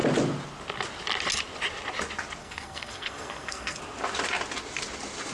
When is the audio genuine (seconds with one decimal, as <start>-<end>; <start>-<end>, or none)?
0.0-2.4; 3.8-5.3